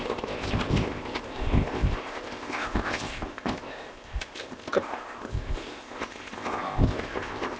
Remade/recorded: remade